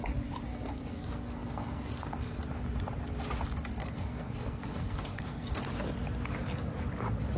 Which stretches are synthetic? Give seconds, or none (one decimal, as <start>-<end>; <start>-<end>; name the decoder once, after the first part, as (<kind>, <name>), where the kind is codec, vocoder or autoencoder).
0.5-2.4 (codec, SNAC); 3.8-5.6